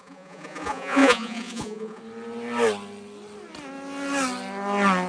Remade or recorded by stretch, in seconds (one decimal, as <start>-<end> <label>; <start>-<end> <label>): 0.0-2.0 remade; 2.0-5.1 recorded